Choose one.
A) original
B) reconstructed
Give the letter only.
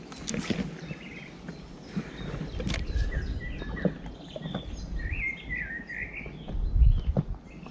A